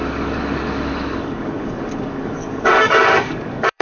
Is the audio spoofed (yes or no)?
yes